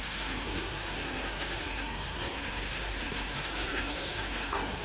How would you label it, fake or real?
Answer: fake